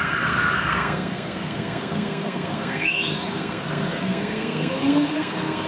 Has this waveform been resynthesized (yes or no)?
yes